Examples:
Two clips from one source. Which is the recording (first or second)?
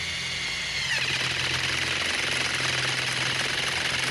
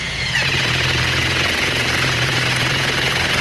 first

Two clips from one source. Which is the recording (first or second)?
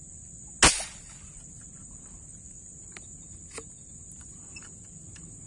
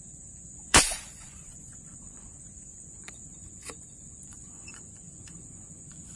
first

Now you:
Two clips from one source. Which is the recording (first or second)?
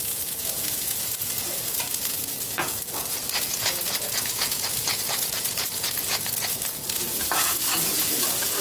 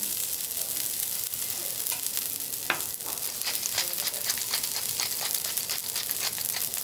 second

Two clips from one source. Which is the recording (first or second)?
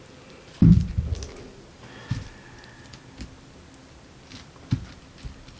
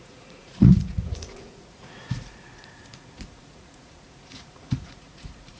first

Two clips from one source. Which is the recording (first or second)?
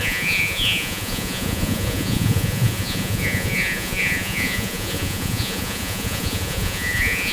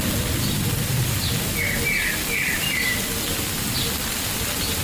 second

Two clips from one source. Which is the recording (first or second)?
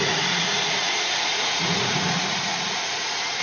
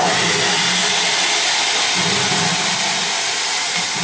second